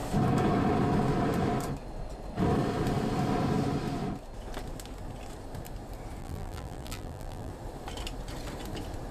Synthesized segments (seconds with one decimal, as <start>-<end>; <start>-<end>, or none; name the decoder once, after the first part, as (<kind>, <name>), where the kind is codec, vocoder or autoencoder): 6.2-7.5 (vocoder, BigVGAN v2)